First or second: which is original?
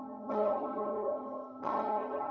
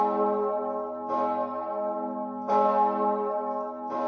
second